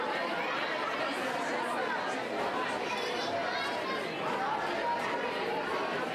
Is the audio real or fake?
real